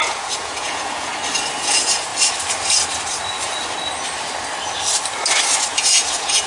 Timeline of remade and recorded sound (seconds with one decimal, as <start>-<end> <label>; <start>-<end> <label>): 0.0-1.1 remade; 1.1-1.6 recorded; 1.6-2.1 remade; 2.1-5.7 recorded; 5.7-6.5 remade